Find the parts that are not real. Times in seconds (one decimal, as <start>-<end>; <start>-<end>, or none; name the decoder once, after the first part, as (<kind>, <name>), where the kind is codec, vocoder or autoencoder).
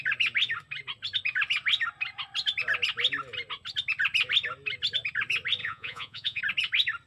5.6-6.4 (vocoder, Vocos)